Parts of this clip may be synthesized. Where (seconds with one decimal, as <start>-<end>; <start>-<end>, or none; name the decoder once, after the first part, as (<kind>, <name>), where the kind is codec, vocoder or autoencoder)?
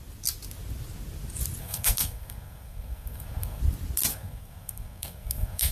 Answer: 1.6-3.6 (codec, SNAC); 4.1-5.7